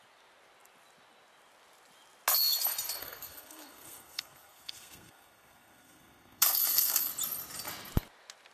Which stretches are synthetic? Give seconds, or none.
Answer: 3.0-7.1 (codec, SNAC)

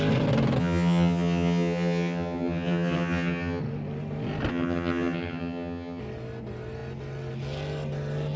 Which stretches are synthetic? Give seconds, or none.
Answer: 0.6-3.6 (vocoder, HiFi-GAN); 4.5-6.0

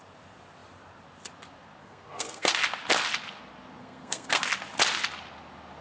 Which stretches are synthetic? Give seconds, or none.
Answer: 1.8-2.5 (codec, SNAC); 3.8-4.4

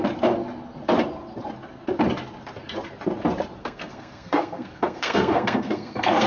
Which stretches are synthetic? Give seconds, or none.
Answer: 3.6-6.3 (codec, SNAC)

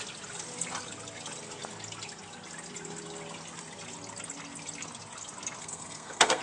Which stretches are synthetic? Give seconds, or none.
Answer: 5.6-6.4 (codec, SNAC)